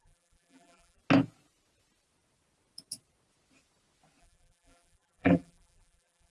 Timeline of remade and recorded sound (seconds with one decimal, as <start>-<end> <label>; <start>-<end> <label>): 0.0-1.0 remade; 1.0-4.2 recorded; 4.2-6.3 remade